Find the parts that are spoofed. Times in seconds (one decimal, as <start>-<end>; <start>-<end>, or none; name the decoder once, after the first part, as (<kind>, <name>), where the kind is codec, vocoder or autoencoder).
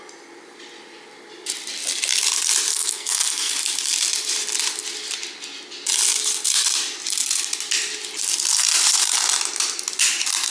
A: 2.7-3.5 (codec, SNAC)